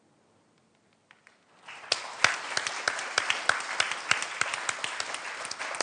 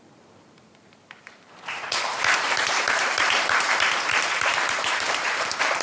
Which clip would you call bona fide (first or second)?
first